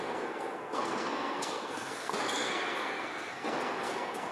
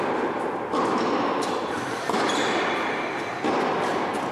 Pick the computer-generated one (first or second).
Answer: first